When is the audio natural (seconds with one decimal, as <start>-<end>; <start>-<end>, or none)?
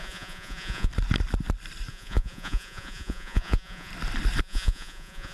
0.9-1.9; 3.9-4.4